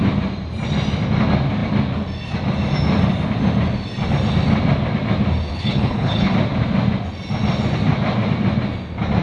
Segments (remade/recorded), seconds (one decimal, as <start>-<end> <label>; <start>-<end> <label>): 0.0-5.5 recorded; 5.5-6.3 remade; 6.3-9.2 recorded